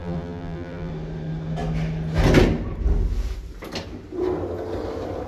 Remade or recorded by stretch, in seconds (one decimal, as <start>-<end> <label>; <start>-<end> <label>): 0.0-0.9 remade; 0.9-5.3 recorded